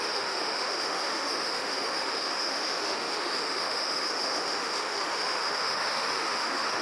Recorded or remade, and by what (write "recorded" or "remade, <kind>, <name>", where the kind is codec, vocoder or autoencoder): remade, autoencoder, DAC-VAE